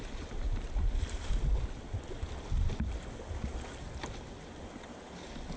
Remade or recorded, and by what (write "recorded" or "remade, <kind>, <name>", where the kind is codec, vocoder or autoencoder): recorded